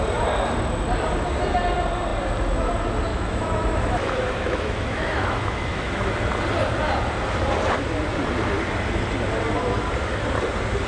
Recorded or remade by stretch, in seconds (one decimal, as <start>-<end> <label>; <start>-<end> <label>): 0.0-3.1 recorded; 3.1-6.1 remade; 6.1-10.9 recorded